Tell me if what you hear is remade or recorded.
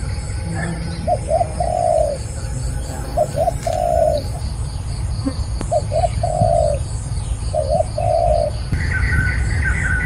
recorded